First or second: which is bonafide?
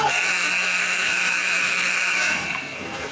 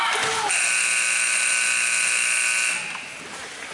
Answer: second